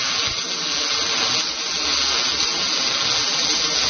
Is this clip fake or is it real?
real